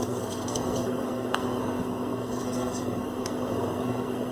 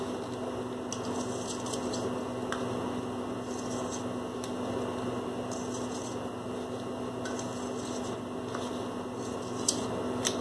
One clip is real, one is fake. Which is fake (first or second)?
first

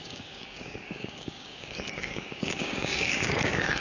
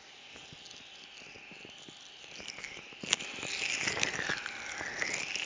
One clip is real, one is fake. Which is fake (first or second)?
first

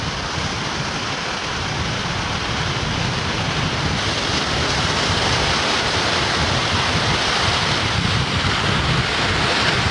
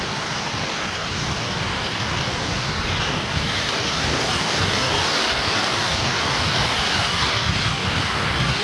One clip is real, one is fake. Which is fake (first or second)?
second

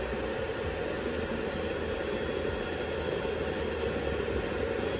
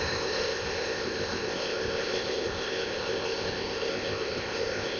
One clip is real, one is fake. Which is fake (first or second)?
second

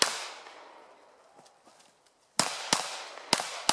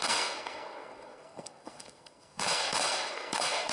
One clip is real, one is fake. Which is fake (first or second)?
second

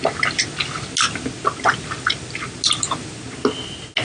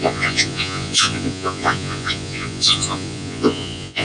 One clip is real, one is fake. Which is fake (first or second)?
second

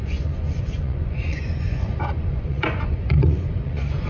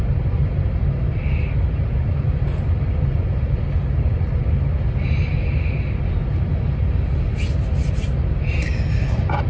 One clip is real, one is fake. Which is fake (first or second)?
first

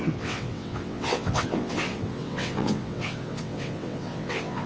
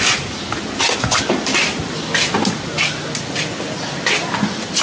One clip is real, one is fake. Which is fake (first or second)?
first